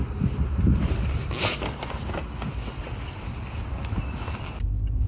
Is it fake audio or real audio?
real